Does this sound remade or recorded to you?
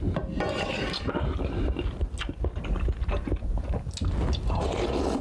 recorded